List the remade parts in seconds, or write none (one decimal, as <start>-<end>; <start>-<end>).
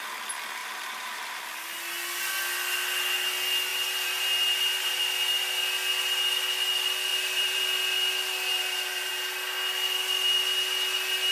0.6-1.4; 3.7-5.0; 7.1-7.6; 8.5-9.1